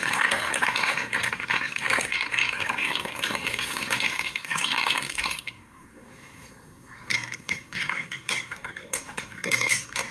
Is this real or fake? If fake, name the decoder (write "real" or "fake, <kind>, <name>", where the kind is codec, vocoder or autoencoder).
fake, codec, SNAC